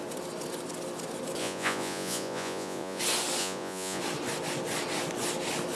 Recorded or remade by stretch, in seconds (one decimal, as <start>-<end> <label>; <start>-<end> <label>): 0.0-1.4 recorded; 1.4-3.0 remade; 3.0-3.4 recorded; 3.4-4.0 remade; 4.0-5.8 recorded